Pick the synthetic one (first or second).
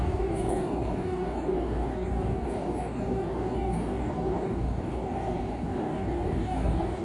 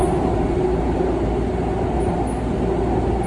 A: first